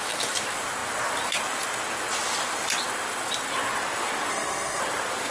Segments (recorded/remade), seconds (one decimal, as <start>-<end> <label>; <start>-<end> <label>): 0.0-4.3 recorded; 4.3-4.8 remade; 4.8-5.3 recorded